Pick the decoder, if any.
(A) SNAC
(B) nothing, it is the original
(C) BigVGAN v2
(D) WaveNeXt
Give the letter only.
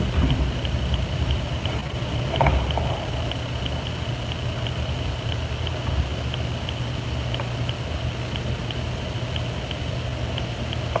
B